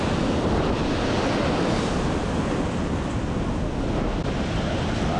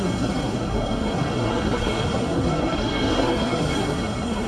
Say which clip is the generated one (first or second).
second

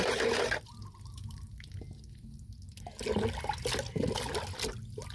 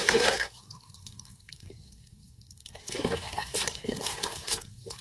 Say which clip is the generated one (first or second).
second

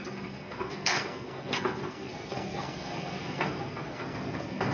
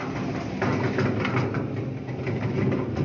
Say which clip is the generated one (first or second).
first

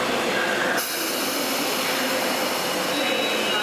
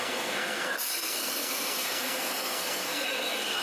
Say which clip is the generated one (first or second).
second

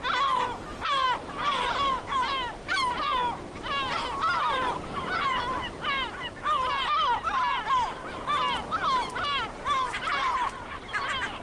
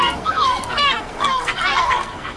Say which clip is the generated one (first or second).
second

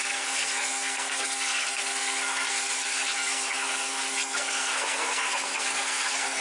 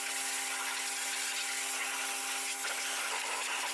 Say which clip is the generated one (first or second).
first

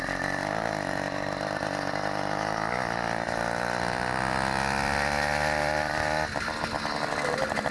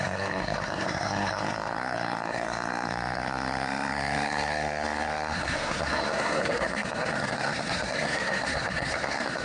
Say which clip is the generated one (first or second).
second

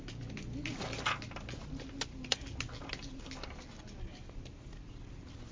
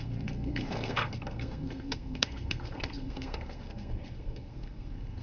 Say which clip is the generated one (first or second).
second